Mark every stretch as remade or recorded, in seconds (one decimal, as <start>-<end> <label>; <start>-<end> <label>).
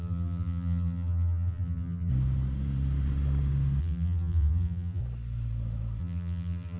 0.0-2.1 remade; 2.1-3.8 recorded; 3.8-5.0 remade; 5.0-6.0 recorded; 6.0-6.8 remade